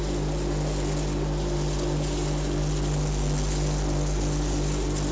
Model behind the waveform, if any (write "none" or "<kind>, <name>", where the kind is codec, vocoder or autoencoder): none